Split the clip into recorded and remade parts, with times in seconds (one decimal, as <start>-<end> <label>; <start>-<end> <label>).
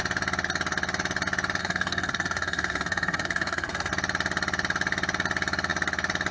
0.0-1.6 recorded; 1.6-3.9 remade; 3.9-6.3 recorded